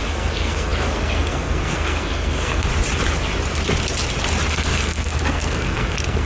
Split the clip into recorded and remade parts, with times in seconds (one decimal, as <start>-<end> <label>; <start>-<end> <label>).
0.0-2.7 remade; 2.7-4.5 recorded; 4.5-6.3 remade